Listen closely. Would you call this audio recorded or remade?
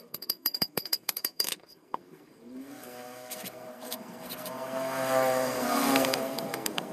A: remade